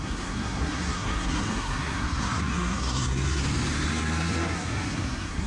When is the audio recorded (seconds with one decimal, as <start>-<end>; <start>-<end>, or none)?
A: 3.4-3.9